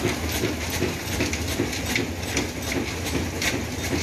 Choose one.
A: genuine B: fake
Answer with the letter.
A